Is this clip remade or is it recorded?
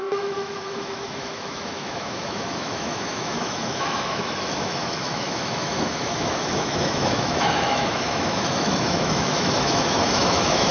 remade